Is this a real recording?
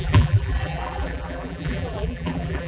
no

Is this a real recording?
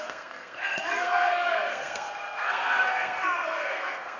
no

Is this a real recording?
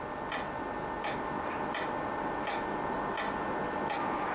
yes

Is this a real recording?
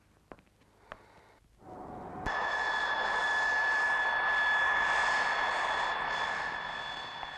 yes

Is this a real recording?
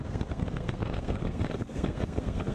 no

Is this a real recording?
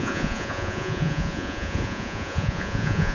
no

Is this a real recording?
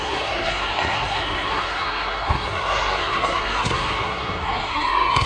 no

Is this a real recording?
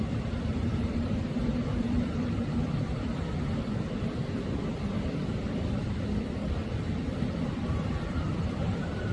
no